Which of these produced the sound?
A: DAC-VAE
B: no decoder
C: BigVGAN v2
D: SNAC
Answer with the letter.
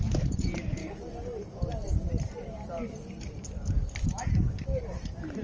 C